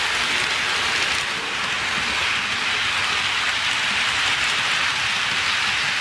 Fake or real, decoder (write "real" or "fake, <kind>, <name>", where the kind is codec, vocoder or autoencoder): real